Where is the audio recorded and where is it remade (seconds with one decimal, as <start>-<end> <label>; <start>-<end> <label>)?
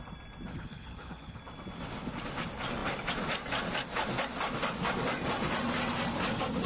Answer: 0.0-0.5 recorded; 0.5-1.4 remade; 1.4-6.7 recorded